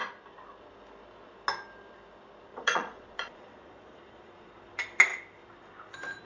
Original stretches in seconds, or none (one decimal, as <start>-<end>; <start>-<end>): 0.0-2.5; 4.5-6.2